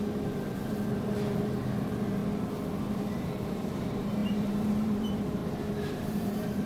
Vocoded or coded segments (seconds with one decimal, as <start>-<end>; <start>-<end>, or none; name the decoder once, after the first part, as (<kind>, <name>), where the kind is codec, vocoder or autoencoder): 0.0-2.2 (vocoder, BigVGAN v2); 3.1-5.4; 5.9-6.7